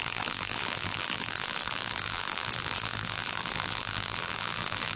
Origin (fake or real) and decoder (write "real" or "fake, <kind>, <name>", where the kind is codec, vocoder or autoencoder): fake, vocoder, BigVGAN v2